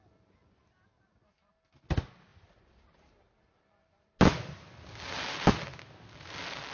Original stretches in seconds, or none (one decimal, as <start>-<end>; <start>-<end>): 0.0-6.7